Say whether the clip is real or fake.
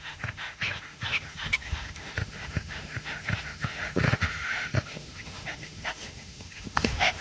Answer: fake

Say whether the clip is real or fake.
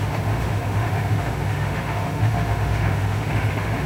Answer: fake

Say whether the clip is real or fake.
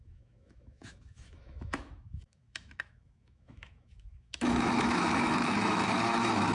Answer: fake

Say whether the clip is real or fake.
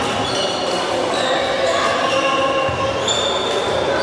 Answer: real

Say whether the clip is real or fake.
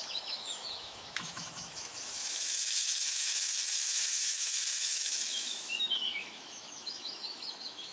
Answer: fake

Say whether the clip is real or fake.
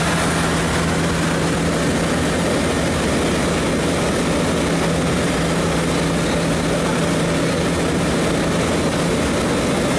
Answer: real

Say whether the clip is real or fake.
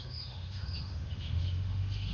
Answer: fake